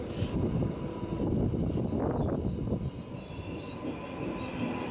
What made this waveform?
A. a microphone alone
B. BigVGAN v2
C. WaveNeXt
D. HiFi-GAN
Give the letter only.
A